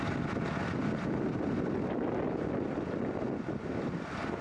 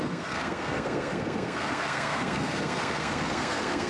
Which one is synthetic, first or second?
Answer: second